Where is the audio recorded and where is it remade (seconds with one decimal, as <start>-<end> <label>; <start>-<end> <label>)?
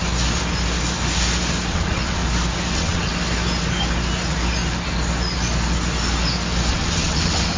0.0-1.7 recorded; 1.7-2.2 remade; 2.2-2.7 recorded; 2.7-3.1 remade; 3.1-6.7 recorded; 6.7-7.6 remade